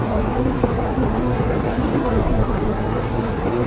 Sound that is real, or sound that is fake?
fake